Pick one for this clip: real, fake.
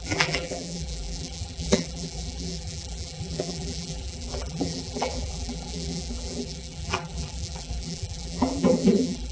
fake